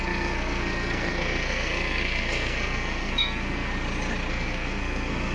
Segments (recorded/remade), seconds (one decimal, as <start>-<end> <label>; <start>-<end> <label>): 0.0-3.7 remade; 3.7-4.3 recorded; 4.3-5.3 remade